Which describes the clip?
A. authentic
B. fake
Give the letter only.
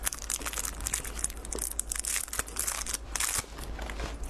A